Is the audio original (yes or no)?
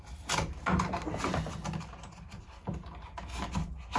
yes